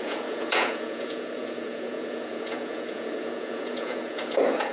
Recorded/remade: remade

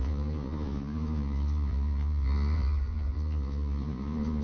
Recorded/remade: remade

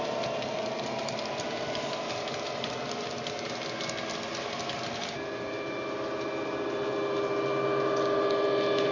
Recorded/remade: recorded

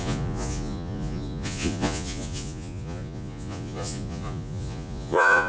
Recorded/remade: remade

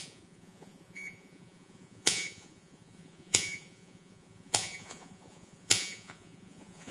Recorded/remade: remade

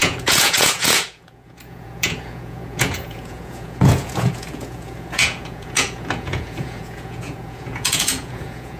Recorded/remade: remade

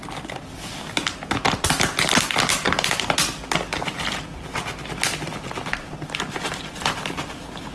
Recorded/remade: recorded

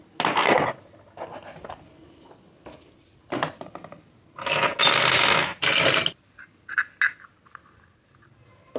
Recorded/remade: recorded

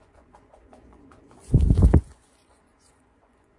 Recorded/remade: remade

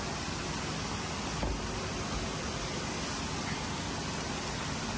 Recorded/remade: recorded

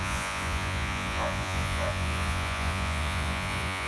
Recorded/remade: remade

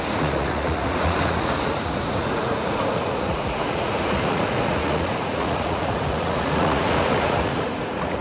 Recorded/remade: remade